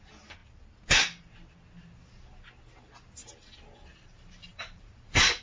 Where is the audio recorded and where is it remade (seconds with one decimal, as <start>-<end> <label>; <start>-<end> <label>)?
0.0-3.9 recorded; 3.9-5.4 remade